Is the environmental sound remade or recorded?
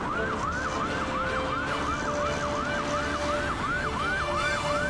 recorded